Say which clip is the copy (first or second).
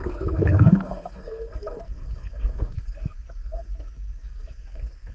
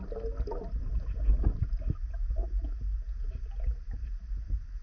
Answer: first